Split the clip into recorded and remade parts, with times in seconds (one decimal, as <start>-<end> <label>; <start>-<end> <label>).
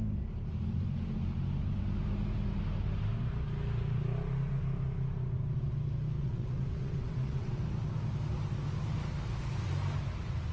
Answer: 0.0-6.2 recorded; 6.2-7.6 remade; 7.6-10.5 recorded